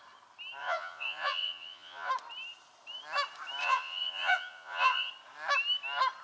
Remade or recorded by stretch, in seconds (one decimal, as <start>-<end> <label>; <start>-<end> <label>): 0.0-0.6 recorded; 0.6-2.1 remade; 2.1-3.6 recorded; 3.6-5.1 remade; 5.1-6.2 recorded